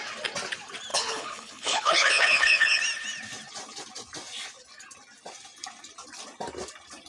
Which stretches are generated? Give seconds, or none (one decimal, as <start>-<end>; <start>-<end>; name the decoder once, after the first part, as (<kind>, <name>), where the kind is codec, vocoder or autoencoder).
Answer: 0.9-2.8 (codec, HILCodec)